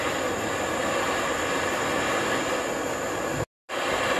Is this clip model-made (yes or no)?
no